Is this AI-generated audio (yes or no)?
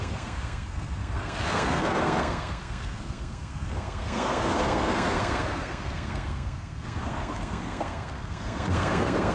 yes